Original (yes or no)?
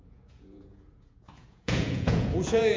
no